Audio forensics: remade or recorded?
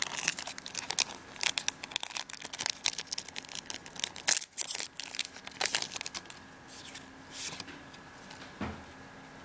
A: recorded